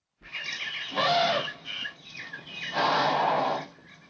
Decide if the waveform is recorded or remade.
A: recorded